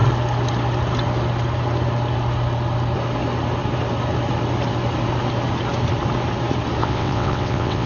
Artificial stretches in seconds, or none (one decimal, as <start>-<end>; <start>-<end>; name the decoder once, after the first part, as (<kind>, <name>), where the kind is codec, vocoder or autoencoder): 6.8-7.9 (vocoder, WaveNeXt)